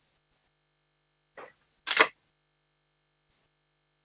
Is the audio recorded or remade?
recorded